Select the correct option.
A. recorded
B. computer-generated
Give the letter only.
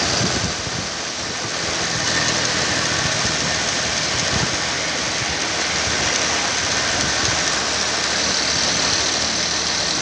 A